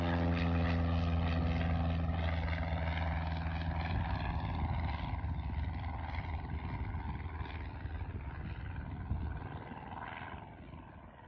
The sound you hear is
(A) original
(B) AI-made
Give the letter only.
A